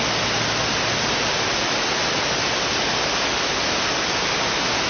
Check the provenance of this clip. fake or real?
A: real